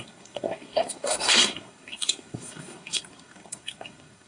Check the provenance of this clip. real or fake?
fake